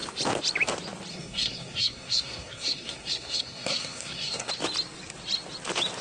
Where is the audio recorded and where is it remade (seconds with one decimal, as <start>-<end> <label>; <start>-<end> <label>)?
0.0-1.1 recorded; 1.1-4.5 remade; 4.5-6.0 recorded